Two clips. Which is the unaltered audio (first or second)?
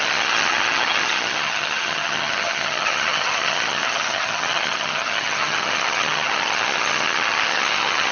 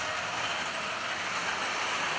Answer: second